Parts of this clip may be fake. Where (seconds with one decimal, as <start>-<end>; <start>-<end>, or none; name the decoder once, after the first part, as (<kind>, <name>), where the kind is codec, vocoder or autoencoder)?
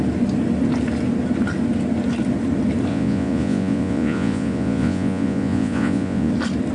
2.9-6.3 (vocoder, Vocos)